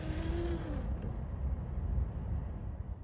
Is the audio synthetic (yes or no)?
no